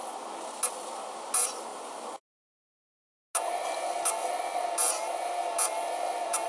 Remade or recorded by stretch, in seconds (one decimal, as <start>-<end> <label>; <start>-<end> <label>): 0.0-1.7 recorded; 1.7-2.8 remade; 2.8-6.5 recorded